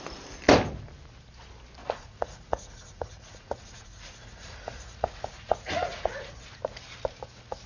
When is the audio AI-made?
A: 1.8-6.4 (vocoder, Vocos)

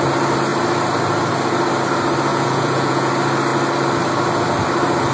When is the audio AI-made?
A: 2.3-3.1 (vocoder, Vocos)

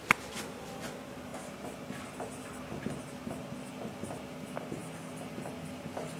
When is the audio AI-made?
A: none